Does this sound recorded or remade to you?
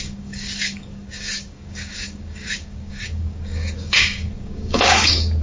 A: remade